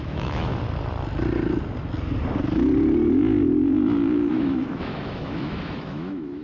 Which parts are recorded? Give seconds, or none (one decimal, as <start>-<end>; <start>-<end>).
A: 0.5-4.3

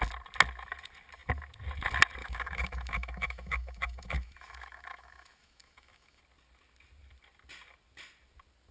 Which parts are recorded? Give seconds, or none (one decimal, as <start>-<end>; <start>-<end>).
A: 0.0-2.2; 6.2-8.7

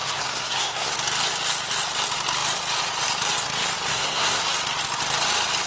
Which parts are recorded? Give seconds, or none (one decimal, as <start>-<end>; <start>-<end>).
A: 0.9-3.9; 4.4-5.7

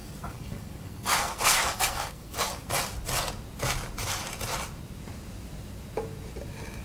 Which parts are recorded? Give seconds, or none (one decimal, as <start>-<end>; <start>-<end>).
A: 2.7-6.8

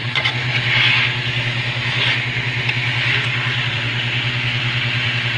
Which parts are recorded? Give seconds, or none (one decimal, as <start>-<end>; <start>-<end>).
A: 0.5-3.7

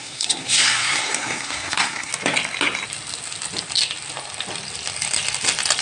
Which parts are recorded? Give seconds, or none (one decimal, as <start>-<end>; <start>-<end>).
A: 2.1-5.8